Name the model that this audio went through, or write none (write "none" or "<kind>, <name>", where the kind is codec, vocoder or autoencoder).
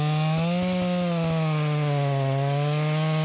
none